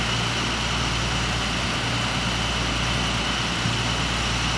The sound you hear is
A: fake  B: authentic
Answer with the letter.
B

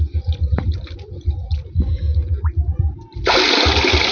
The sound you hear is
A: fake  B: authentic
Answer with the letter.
B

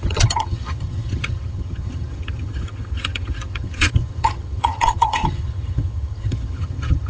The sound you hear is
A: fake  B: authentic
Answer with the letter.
A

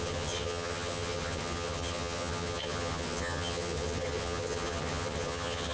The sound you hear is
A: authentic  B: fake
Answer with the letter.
B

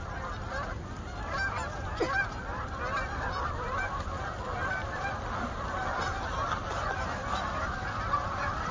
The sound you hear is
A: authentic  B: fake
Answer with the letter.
B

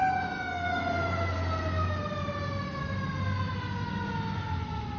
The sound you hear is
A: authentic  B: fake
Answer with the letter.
A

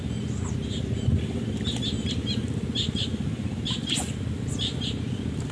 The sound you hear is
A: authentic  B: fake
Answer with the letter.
A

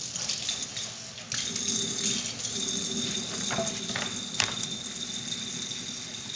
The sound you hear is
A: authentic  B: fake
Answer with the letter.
A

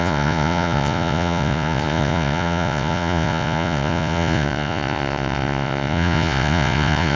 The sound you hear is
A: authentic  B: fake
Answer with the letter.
B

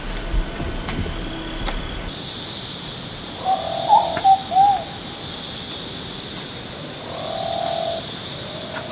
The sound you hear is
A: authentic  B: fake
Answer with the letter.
A